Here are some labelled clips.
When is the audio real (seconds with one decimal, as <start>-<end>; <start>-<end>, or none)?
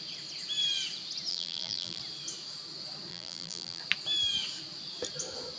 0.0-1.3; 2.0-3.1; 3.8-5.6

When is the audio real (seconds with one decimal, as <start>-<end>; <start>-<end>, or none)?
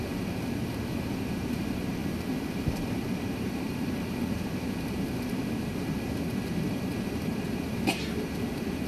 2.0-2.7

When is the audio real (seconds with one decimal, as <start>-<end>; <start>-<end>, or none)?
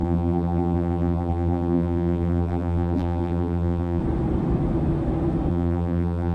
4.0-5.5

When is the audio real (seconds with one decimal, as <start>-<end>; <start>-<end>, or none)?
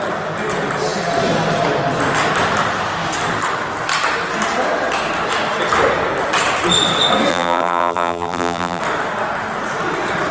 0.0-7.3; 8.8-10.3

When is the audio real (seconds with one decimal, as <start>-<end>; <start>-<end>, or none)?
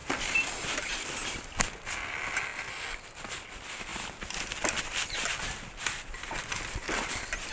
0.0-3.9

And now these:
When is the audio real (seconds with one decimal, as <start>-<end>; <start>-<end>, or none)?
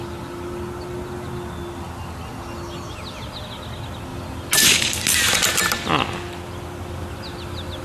0.0-7.8